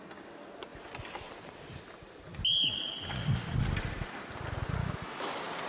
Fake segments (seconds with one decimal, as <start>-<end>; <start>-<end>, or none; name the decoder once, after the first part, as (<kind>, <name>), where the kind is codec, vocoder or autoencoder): 4.8-5.3 (autoencoder, DAC-VAE)